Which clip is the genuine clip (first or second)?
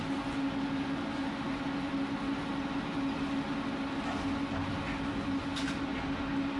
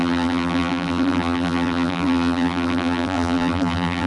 first